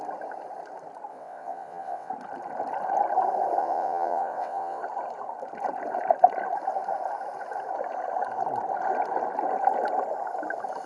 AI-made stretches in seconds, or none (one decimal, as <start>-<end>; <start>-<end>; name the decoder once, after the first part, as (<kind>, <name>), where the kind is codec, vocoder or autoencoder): 1.1-2.1 (vocoder, WaveNeXt); 3.6-4.8